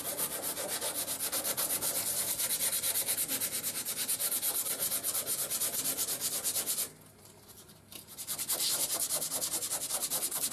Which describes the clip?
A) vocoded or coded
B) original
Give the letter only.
B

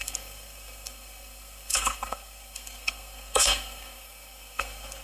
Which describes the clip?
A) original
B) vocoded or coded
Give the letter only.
B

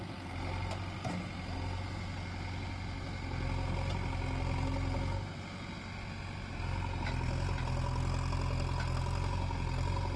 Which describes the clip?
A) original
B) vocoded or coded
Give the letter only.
A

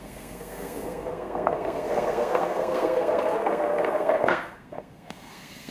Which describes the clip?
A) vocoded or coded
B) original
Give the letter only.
A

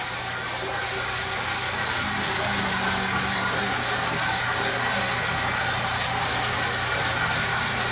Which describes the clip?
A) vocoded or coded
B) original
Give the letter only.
B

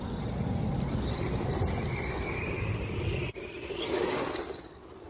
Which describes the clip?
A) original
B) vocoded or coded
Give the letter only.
A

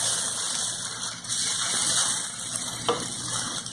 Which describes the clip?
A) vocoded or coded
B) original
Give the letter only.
B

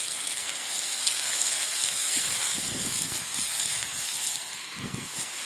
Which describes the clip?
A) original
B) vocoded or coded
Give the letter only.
B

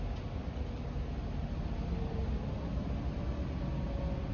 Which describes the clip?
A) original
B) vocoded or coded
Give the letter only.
A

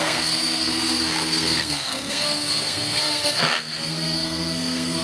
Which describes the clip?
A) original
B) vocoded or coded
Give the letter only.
B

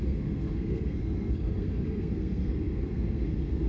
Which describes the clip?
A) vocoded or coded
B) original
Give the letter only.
A